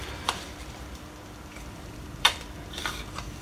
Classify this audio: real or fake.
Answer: fake